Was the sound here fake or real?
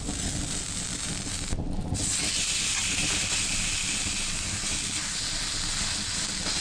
real